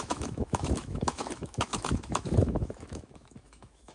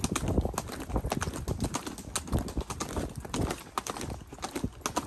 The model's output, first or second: first